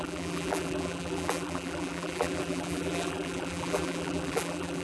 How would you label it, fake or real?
fake